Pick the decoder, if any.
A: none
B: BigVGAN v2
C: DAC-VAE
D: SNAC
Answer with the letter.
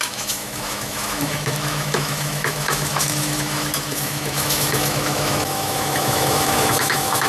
C